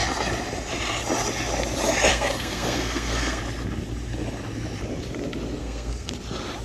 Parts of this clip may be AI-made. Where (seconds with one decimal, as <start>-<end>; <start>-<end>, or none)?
2.1-3.4; 5.6-6.1